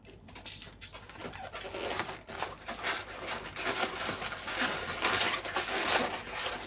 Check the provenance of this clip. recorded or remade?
remade